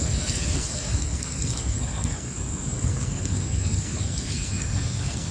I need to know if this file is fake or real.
fake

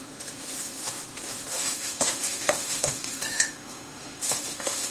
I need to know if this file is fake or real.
fake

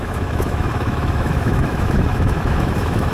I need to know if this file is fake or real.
fake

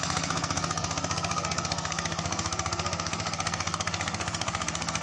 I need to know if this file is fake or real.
fake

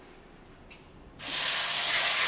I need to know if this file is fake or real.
real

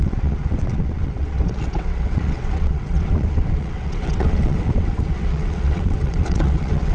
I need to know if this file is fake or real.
fake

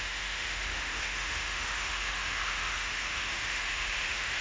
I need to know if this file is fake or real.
fake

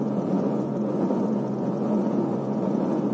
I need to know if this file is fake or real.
fake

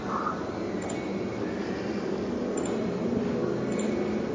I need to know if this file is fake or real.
real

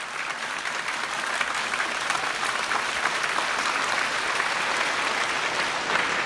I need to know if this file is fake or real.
real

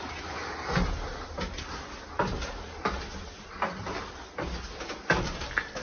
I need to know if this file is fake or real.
real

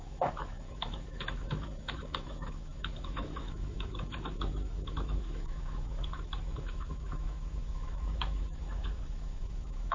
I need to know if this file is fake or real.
fake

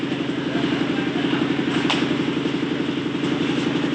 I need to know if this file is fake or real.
real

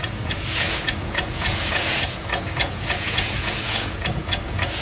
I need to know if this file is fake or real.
fake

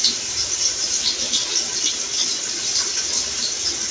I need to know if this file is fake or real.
real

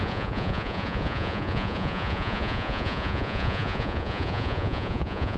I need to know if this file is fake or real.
fake